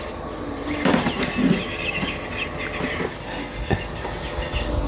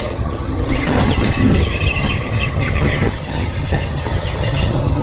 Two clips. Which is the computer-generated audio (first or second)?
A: second